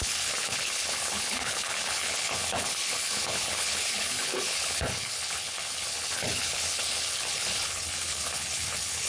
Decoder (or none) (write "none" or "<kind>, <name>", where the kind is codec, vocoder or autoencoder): codec, HILCodec